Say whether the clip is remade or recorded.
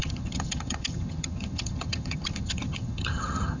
remade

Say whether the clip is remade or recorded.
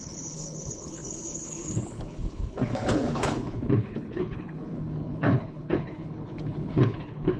remade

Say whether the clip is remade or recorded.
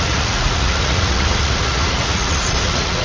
remade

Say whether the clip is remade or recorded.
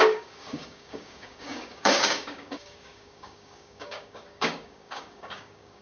remade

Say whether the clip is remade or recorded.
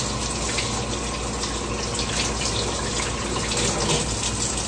recorded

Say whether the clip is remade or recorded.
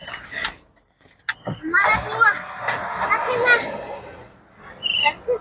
recorded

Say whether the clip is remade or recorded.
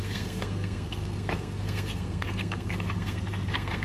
remade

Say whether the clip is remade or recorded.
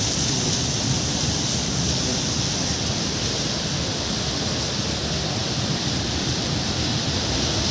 remade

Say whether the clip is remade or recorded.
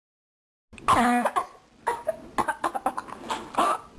recorded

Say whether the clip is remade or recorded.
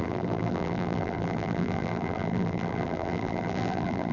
remade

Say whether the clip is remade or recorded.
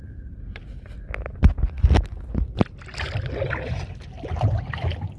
recorded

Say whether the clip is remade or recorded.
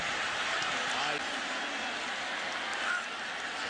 recorded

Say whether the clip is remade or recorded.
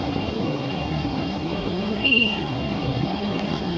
remade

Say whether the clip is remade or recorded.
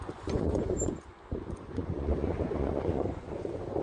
remade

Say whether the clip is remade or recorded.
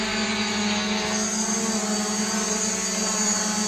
recorded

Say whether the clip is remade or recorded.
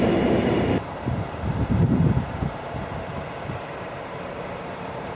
remade